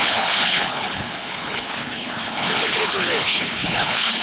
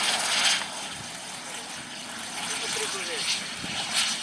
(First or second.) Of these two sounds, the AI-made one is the first